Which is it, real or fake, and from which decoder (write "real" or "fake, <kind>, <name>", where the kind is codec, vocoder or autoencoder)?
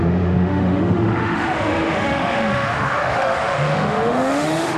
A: fake, autoencoder, DAC-VAE